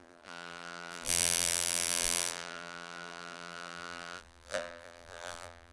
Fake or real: fake